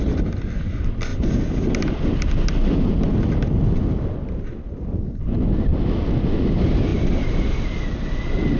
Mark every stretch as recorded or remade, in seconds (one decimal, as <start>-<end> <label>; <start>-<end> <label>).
0.0-8.6 recorded